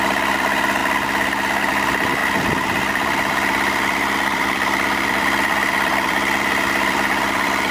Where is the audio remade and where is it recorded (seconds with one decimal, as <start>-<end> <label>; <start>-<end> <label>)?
0.0-0.8 remade; 0.8-1.7 recorded; 1.7-2.2 remade; 2.2-2.9 recorded; 2.9-7.7 remade